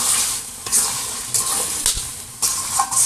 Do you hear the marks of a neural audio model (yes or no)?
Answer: no